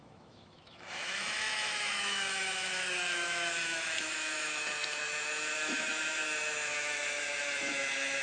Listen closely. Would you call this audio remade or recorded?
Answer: remade